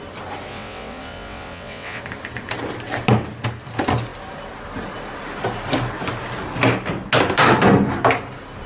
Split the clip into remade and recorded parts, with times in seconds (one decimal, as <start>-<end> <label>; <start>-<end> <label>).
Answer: 0.0-0.5 recorded; 0.5-2.0 remade; 2.0-8.7 recorded